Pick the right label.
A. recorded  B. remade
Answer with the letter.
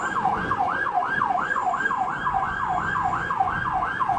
B